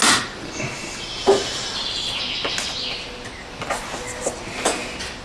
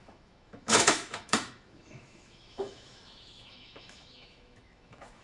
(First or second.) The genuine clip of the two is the first